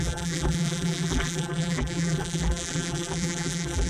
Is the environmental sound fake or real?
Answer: fake